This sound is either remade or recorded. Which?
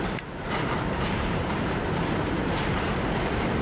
remade